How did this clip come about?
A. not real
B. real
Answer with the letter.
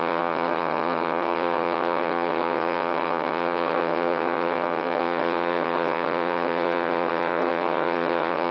A